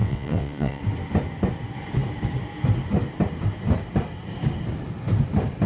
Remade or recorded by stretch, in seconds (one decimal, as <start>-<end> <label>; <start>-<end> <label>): 0.0-0.8 remade; 0.8-5.7 recorded